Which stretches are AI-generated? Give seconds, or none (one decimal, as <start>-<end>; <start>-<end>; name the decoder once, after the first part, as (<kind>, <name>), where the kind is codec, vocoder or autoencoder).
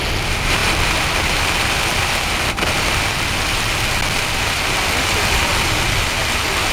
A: none